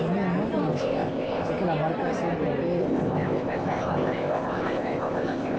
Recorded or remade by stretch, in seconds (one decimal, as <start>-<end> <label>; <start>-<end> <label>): 0.0-0.7 recorded; 0.7-1.5 remade; 1.5-2.8 recorded; 2.8-5.6 remade